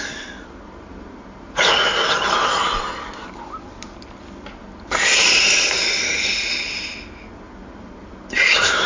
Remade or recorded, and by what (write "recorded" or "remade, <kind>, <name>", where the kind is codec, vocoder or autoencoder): recorded